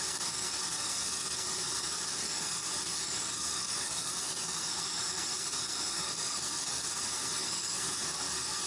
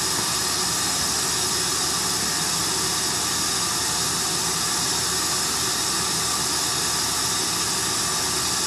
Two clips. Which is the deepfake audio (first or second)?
first